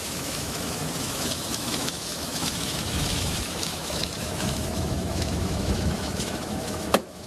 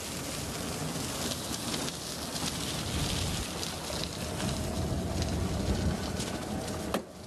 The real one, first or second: second